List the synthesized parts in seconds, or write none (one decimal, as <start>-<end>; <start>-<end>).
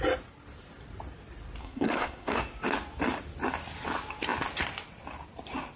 1.6-2.4